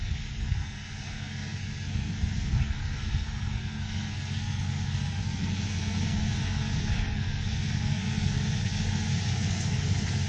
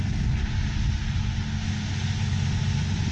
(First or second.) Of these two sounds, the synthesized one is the first